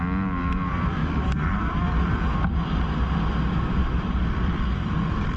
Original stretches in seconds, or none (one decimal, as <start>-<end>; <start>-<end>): 0.0-1.0; 2.8-3.8; 4.9-5.4